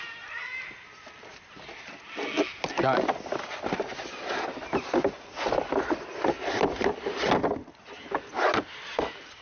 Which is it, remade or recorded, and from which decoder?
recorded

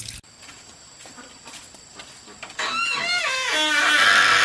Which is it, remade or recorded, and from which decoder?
recorded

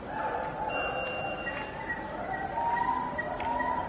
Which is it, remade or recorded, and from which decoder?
recorded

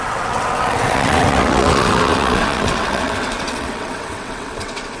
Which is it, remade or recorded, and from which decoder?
remade, vocoder, WaveNeXt